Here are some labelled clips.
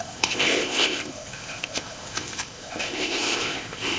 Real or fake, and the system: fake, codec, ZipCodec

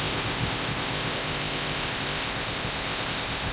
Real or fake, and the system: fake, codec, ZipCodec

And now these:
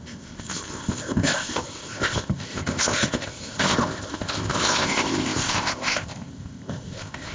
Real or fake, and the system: fake, codec, ZipCodec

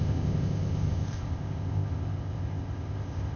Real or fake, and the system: fake, codec, ZipCodec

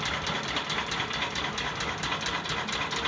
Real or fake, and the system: real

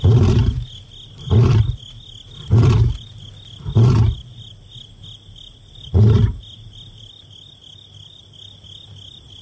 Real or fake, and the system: real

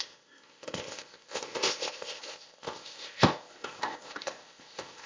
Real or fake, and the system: fake, codec, ZipCodec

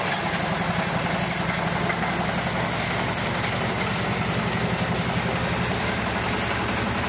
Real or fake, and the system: real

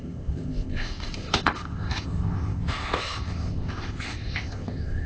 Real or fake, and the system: fake, codec, ZipCodec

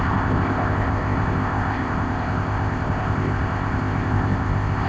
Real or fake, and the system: fake, codec, ZipCodec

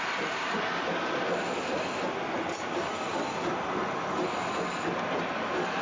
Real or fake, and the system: real